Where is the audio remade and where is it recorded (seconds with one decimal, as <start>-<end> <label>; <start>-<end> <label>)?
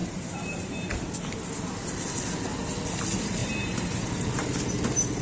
0.0-1.1 remade; 1.1-3.4 recorded; 3.4-4.6 remade; 4.6-5.2 recorded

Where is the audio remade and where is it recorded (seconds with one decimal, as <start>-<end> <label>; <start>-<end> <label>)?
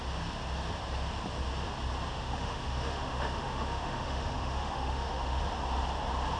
0.0-2.1 recorded; 2.1-5.4 remade; 5.4-6.4 recorded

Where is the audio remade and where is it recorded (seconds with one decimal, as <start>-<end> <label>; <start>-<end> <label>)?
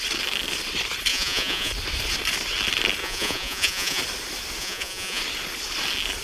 0.0-1.1 recorded; 1.1-1.7 remade; 1.7-3.0 recorded; 3.0-4.0 remade; 4.0-4.6 recorded; 4.6-5.2 remade; 5.2-6.2 recorded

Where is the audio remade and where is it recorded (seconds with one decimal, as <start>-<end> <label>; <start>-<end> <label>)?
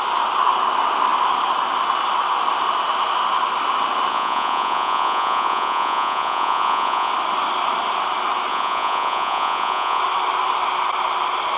0.0-4.1 recorded; 4.1-7.1 remade; 7.1-8.5 recorded; 8.5-10.0 remade; 10.0-11.6 recorded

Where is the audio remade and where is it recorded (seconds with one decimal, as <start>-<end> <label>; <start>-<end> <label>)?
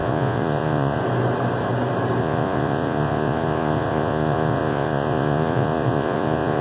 0.0-1.0 remade; 1.0-2.2 recorded; 2.2-6.6 remade